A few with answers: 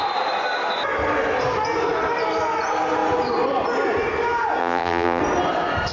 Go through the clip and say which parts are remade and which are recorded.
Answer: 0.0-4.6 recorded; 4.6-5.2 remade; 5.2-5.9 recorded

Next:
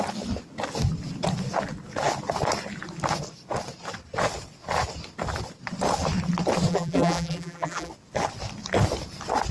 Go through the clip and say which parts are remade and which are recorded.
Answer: 0.0-6.7 recorded; 6.7-7.9 remade; 7.9-9.5 recorded

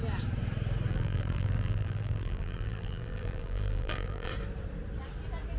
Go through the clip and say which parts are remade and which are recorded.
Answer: 0.0-0.9 recorded; 0.9-4.3 remade; 4.3-5.6 recorded

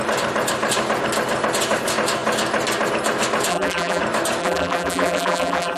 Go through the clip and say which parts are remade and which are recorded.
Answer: 0.0-3.5 recorded; 3.5-4.0 remade; 4.0-4.4 recorded; 4.4-5.8 remade

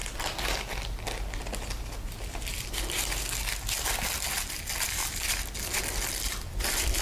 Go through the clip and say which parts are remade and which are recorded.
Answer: 0.0-4.2 recorded; 4.2-7.0 remade

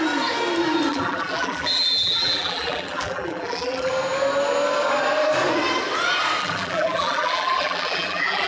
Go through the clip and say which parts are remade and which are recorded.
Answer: 0.0-0.9 recorded; 0.9-3.9 remade; 3.9-6.4 recorded; 6.4-8.5 remade

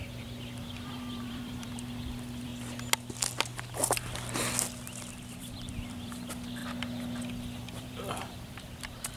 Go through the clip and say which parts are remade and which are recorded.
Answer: 0.0-2.5 remade; 2.5-5.4 recorded; 5.4-6.6 remade; 6.6-7.8 recorded; 7.8-9.2 remade

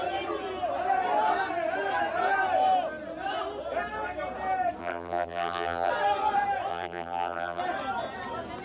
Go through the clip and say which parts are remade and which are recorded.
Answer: 0.0-4.8 recorded; 4.8-5.9 remade; 5.9-6.7 recorded; 6.7-7.6 remade; 7.6-8.6 recorded